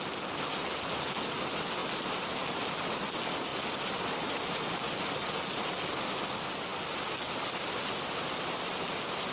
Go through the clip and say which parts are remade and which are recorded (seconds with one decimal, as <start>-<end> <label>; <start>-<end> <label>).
0.0-1.8 recorded; 1.8-2.6 remade; 2.6-3.5 recorded; 3.5-5.4 remade; 5.4-9.3 recorded